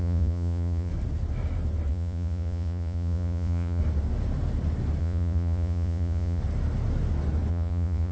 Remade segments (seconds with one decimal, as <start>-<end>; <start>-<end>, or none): 0.0-0.9; 1.9-3.8; 5.0-6.4; 7.5-8.1